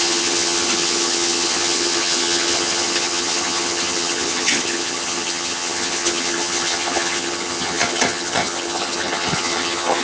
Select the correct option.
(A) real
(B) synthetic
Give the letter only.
B